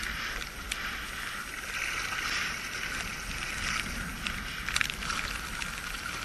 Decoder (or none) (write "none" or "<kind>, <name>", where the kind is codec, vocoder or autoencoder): none